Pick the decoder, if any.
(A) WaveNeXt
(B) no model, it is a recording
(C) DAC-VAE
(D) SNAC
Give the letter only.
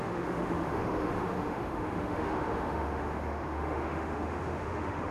C